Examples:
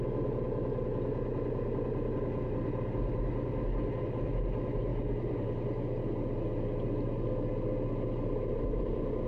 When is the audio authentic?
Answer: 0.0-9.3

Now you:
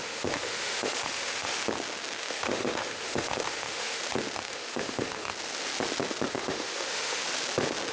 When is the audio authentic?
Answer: 1.6-2.2; 4.0-4.5; 5.3-6.3; 7.2-7.9

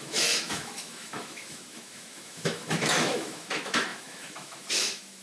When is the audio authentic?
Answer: none

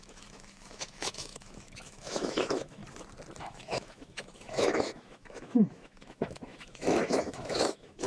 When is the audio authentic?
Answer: 2.8-3.4

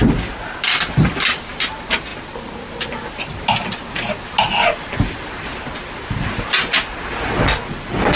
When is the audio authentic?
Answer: 0.0-8.2